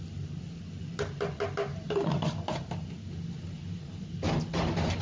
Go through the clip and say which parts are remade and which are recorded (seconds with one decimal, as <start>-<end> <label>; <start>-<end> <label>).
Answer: 0.0-1.7 recorded; 1.7-4.4 remade; 4.4-5.0 recorded

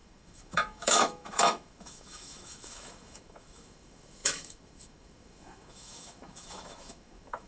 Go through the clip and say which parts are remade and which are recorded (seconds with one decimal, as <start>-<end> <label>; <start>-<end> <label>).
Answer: 0.0-7.5 remade